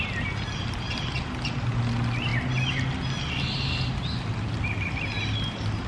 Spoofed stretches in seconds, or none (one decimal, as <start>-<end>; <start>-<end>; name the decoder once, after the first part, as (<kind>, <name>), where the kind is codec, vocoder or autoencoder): none